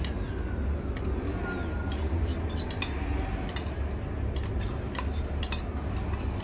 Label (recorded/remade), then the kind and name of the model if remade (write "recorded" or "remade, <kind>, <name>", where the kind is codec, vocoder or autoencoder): recorded